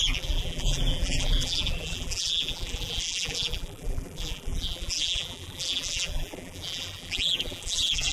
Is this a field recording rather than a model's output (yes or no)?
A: no